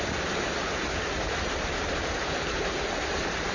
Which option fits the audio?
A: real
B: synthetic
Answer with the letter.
B